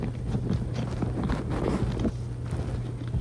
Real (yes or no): yes